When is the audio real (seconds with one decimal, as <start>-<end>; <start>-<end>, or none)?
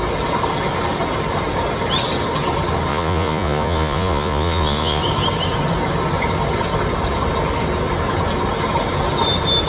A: 0.0-2.9; 5.0-9.7